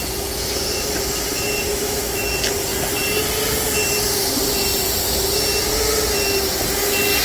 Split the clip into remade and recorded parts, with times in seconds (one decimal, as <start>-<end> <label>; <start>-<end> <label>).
0.0-1.7 recorded; 1.7-2.2 remade; 2.2-7.2 recorded